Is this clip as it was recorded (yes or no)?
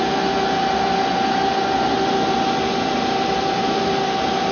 yes